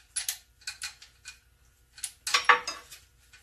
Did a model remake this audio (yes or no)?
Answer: no